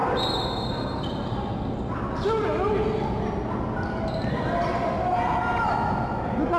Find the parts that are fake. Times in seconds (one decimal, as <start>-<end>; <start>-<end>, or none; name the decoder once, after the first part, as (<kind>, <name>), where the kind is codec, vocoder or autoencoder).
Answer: none